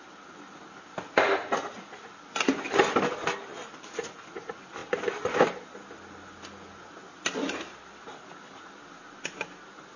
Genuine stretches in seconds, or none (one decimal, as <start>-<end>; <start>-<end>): 0.0-10.0